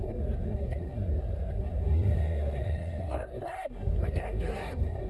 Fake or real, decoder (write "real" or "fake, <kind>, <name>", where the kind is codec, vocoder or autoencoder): fake, codec, SNAC